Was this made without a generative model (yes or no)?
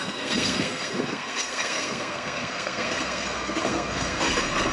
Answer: no